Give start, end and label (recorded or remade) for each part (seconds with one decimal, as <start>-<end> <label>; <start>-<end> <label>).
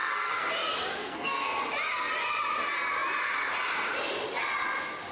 0.0-0.5 remade; 0.5-0.9 recorded; 0.9-1.6 remade; 1.6-5.1 recorded